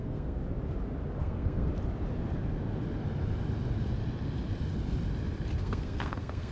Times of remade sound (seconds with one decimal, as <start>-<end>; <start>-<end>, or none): 0.0-0.4; 1.2-1.7; 5.6-6.5